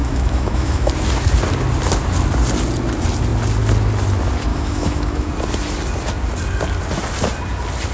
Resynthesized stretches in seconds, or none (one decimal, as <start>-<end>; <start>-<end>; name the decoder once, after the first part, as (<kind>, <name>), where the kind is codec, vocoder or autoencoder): 0.0-0.9 (autoencoder, DAC-VAE); 4.5-5.3